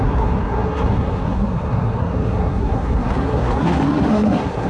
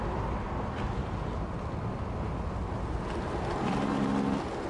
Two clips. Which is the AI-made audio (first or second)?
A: first